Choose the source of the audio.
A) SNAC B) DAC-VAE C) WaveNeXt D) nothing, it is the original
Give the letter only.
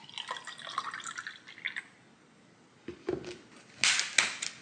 D